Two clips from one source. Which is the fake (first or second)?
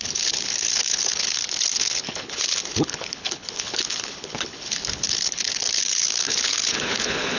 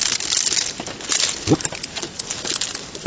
first